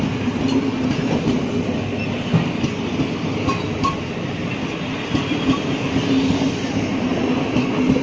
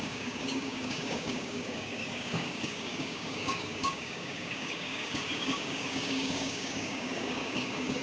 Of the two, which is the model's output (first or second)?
second